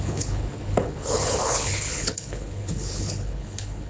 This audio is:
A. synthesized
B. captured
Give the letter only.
A